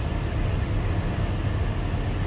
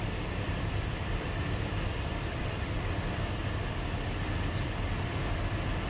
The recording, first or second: first